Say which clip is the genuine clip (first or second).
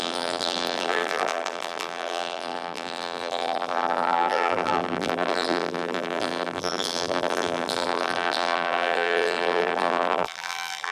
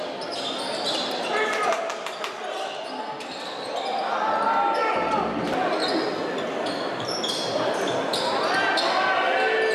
second